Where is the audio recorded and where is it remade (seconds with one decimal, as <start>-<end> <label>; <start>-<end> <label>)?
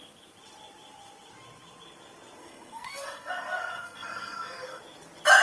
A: 0.0-2.4 recorded; 2.4-4.8 remade; 4.8-5.4 recorded